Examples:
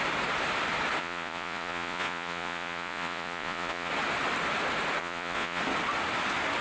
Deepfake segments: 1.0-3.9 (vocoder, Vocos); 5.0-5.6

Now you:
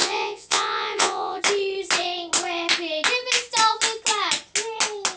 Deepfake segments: 0.0-1.4 (vocoder, Vocos)

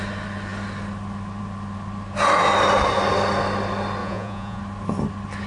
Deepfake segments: 4.0-4.6 (vocoder, Vocos)

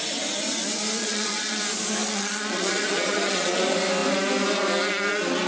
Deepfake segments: 1.0-1.6 (vocoder, Vocos); 2.0-3.6

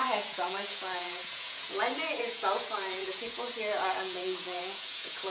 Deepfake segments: 0.0-5.3 (vocoder, Vocos)

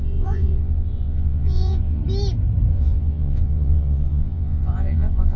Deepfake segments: 0.0-2.0 (vocoder, Vocos); 2.7-5.4

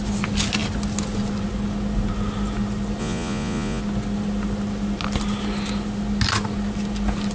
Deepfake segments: 3.0-3.8 (vocoder, Vocos)